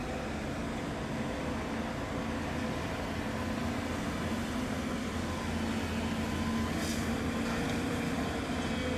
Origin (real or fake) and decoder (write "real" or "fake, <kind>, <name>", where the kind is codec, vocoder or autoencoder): real